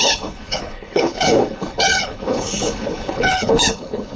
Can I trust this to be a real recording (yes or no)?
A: no